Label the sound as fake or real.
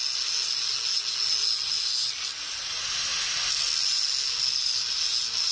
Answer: real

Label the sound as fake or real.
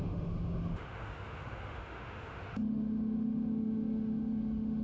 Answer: fake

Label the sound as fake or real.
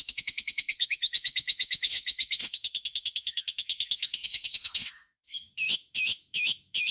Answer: fake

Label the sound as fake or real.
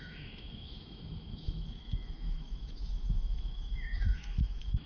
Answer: fake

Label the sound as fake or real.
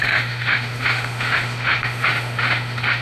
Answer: fake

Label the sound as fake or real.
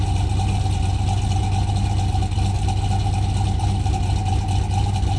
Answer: real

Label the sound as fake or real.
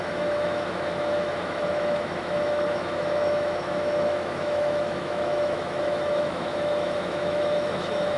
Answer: fake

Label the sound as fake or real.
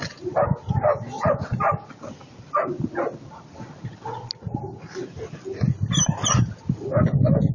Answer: real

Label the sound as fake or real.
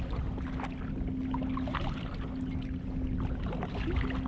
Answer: real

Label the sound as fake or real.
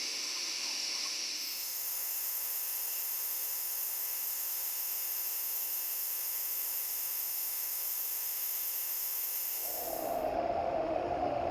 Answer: fake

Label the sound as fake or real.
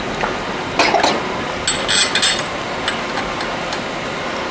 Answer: real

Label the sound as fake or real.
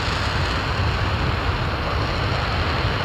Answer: real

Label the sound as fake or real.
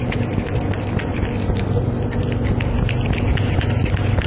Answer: real